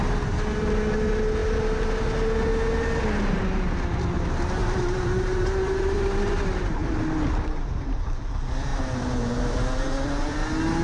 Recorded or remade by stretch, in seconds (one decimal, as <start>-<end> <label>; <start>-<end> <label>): 0.0-4.6 recorded; 4.6-6.2 remade; 6.2-8.7 recorded; 8.7-9.6 remade; 9.6-10.8 recorded